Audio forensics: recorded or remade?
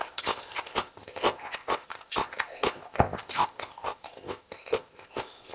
remade